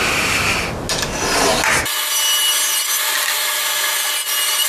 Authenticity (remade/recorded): recorded